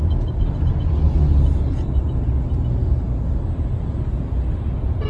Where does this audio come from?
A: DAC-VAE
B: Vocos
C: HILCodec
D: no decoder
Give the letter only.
D